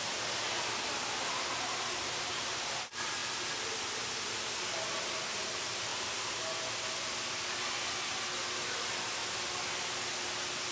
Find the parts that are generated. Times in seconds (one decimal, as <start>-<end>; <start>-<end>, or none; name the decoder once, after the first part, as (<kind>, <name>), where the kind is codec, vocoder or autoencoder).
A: none